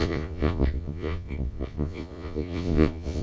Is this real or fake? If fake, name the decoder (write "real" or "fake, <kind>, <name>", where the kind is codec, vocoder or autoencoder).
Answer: fake, vocoder, Vocos